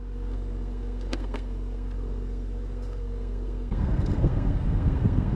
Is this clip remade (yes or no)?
yes